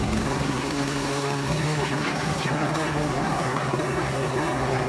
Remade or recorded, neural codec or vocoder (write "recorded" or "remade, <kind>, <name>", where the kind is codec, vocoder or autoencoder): remade, codec, SNAC